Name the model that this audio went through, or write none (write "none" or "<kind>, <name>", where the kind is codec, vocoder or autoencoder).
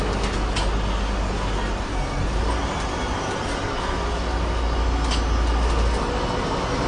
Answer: none